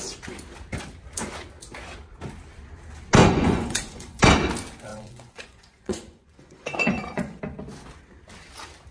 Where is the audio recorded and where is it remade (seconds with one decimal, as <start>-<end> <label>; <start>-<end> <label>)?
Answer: 0.0-3.2 recorded; 3.2-4.2 remade; 4.2-4.9 recorded; 4.9-7.4 remade; 7.4-8.9 recorded